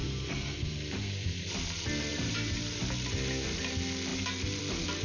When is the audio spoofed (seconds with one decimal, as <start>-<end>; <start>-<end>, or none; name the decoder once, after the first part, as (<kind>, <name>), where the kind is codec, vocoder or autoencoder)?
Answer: 0.0-1.5 (vocoder, BigVGAN v2); 2.1-2.8